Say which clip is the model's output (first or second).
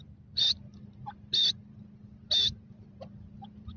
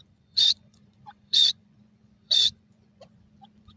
second